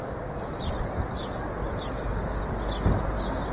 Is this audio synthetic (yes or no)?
no